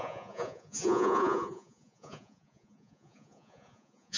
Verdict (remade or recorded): remade